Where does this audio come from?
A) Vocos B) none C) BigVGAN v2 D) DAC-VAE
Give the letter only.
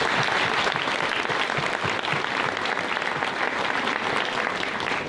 B